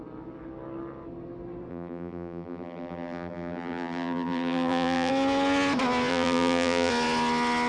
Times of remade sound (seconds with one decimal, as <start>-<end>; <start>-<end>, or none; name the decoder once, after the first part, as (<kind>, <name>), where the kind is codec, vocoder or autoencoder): 1.7-5.1 (vocoder, BigVGAN v2); 6.1-6.9